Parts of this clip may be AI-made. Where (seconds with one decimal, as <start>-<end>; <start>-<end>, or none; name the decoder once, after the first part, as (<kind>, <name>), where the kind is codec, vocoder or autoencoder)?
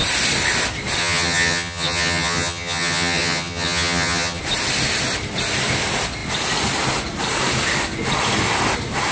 1.0-4.4 (vocoder, HiFi-GAN)